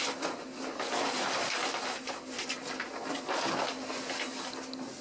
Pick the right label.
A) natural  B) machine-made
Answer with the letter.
A